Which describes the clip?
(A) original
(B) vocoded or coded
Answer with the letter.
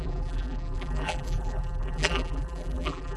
B